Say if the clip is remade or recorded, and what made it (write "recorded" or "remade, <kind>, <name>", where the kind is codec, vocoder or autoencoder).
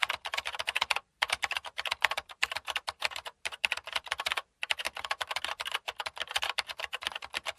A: remade, vocoder, BigVGAN v2